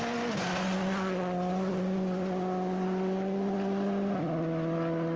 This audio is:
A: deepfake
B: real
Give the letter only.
B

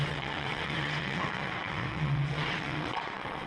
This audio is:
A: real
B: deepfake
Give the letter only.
B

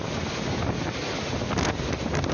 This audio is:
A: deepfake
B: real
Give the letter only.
B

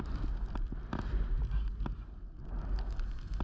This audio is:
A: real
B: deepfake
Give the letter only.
A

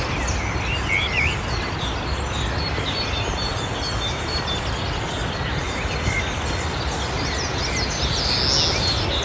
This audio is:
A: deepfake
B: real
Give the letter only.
B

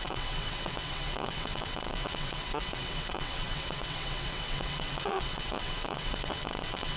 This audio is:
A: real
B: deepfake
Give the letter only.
B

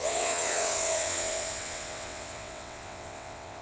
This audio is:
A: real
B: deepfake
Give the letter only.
B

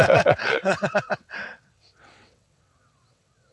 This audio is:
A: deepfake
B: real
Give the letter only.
A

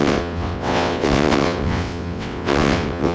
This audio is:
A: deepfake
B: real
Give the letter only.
A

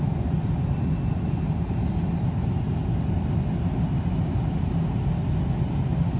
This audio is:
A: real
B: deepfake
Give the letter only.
A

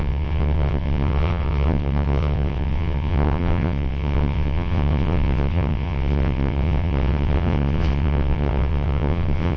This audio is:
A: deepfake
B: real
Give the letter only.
A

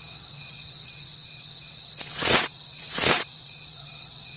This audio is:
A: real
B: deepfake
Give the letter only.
B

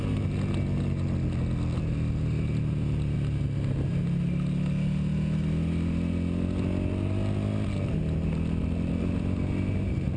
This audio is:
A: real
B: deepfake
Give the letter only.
A